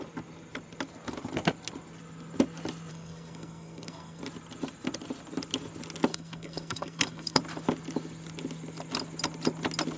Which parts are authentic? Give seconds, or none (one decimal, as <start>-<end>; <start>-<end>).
0.0-2.9; 4.2-6.1; 7.4-10.0